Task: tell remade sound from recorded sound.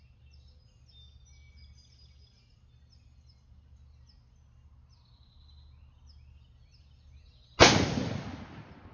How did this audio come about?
recorded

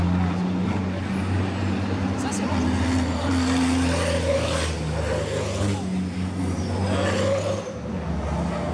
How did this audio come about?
recorded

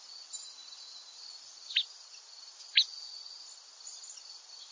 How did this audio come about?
recorded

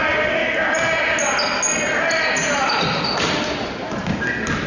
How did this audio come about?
recorded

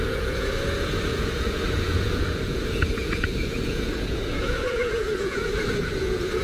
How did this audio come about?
remade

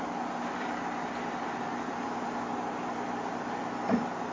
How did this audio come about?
recorded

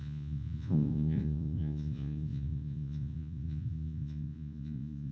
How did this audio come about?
remade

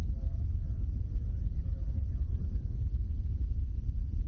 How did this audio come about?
recorded